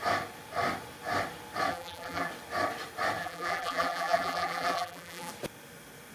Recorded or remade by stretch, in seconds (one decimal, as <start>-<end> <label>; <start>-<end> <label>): 0.0-1.7 recorded; 1.7-2.3 remade; 2.3-3.2 recorded; 3.2-5.3 remade; 5.3-6.1 recorded